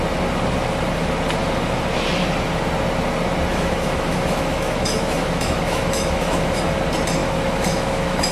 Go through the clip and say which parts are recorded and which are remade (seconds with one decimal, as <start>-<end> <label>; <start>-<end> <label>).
0.0-3.5 recorded; 3.5-6.6 remade; 6.6-7.2 recorded; 7.2-8.3 remade